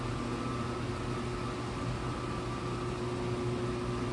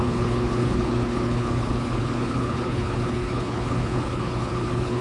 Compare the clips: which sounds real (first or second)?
first